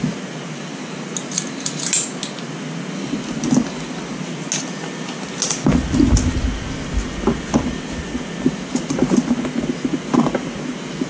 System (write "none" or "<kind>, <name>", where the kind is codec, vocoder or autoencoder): none